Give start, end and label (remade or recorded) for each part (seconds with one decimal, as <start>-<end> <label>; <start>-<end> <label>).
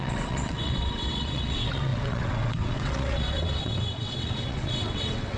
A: 0.0-5.4 remade